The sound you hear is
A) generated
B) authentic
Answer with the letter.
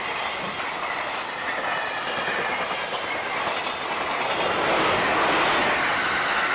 B